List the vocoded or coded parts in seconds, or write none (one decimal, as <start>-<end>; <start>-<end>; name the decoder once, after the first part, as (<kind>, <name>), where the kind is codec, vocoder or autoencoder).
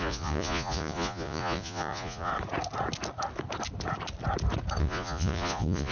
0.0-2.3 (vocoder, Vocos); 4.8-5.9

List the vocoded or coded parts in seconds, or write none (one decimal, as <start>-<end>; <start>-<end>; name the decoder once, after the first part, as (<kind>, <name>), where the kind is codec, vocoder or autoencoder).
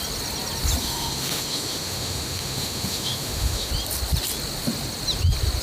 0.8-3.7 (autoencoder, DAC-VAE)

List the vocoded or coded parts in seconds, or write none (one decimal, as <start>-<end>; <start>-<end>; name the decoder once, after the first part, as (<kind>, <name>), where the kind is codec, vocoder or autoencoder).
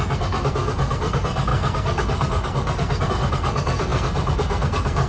0.0-5.1 (codec, SNAC)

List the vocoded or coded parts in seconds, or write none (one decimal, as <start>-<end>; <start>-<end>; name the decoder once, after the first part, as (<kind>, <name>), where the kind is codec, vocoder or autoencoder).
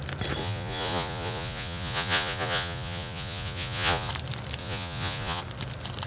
0.4-4.1 (vocoder, Vocos); 4.6-5.4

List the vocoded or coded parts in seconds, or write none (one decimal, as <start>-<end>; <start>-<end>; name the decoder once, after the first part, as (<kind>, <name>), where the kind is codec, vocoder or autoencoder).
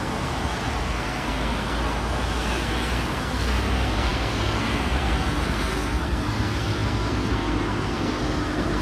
0.0-8.8 (codec, SNAC)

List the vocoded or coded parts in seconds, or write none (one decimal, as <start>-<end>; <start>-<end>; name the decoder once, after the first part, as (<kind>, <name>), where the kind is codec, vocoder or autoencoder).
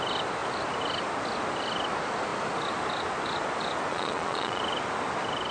3.9-4.6 (vocoder, Vocos)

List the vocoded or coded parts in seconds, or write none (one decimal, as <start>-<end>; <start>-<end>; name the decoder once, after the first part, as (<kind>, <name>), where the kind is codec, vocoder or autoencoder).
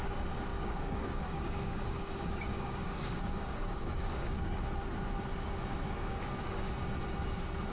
0.5-4.6 (codec, DAC); 6.1-6.7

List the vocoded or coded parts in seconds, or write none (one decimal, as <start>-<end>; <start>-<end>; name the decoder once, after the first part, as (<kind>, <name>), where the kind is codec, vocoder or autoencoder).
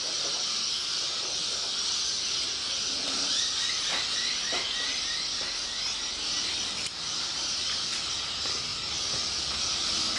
6.4-8.0 (vocoder, BigVGAN v2)